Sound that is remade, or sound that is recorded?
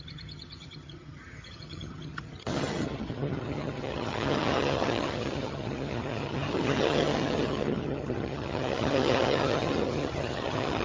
remade